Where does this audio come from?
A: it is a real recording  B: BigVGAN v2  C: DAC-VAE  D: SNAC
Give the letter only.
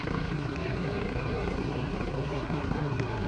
D